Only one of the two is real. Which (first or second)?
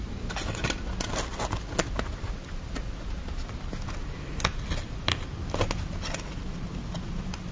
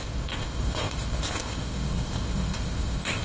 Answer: first